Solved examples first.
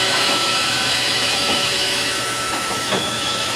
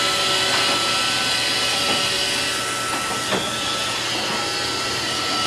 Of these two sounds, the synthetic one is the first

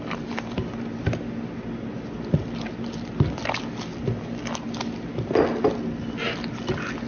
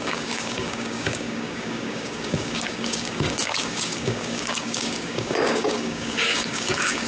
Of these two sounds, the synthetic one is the second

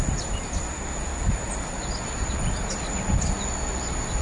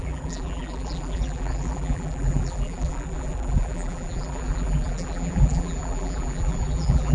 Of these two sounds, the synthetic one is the second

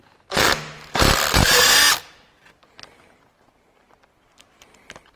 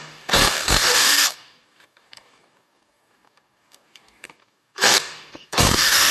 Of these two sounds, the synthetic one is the second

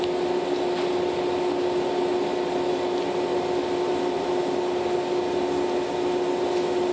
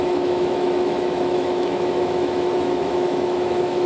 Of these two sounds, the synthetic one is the second